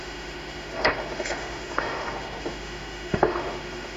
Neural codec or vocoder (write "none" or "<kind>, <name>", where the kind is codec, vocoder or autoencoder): autoencoder, DAC-VAE